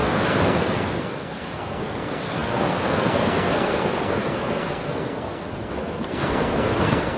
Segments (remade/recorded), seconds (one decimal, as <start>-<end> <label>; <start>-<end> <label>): 0.0-7.2 remade